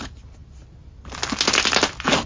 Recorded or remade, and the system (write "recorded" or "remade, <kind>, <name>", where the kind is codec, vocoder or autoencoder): recorded